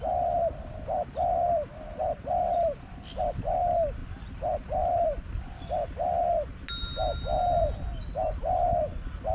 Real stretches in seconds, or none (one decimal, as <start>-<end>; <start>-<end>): 0.0-9.3